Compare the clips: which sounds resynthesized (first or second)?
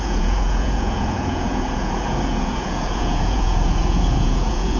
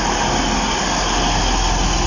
first